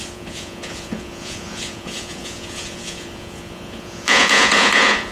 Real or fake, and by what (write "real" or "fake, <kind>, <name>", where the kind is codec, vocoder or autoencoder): fake, vocoder, Vocos